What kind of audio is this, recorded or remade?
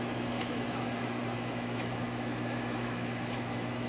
remade